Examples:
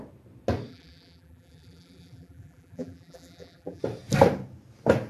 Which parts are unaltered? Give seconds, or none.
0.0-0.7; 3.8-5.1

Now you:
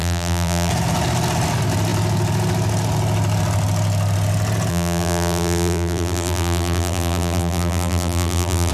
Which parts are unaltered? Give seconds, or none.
0.7-4.7

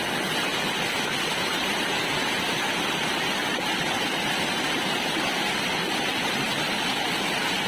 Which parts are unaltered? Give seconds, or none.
0.0-1.5; 2.1-7.7

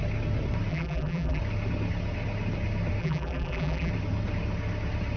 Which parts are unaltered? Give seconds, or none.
0.0-0.7; 1.4-3.0; 3.9-5.2